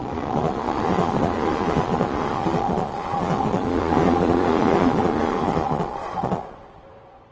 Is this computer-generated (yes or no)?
yes